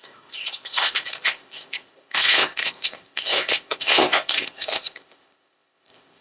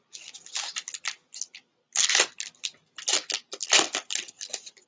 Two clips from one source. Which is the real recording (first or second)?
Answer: second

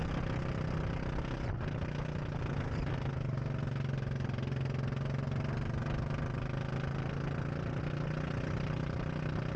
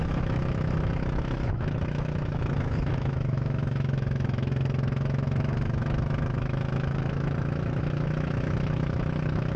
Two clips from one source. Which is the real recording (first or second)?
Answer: first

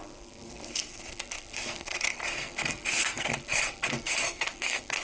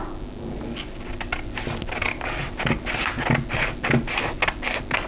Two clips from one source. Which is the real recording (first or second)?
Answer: second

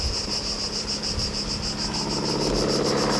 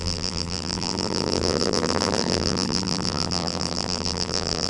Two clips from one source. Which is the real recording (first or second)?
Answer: first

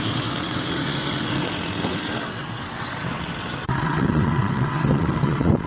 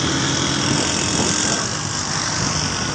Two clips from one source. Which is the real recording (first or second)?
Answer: second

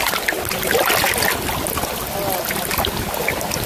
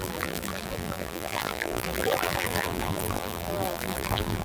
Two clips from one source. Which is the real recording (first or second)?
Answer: first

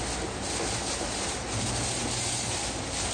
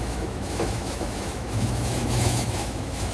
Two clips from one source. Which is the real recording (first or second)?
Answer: first